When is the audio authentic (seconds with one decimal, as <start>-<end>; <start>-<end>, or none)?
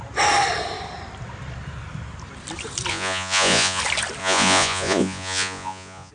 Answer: 0.0-2.9; 3.8-4.2